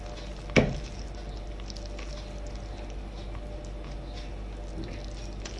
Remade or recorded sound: recorded